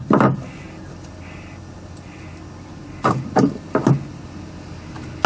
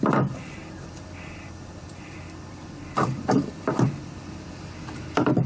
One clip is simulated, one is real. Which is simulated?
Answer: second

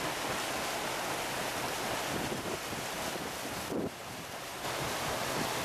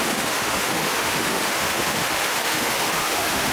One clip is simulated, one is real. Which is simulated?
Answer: second